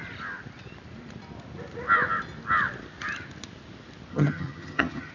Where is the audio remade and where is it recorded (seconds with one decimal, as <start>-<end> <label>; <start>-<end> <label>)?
0.0-4.1 recorded; 4.1-5.1 remade